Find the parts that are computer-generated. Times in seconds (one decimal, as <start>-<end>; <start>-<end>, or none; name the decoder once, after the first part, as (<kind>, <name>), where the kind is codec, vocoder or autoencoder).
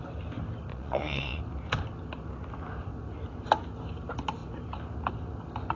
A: 0.7-1.4 (vocoder, Vocos)